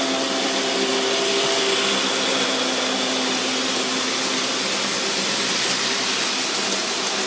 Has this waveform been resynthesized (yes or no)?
no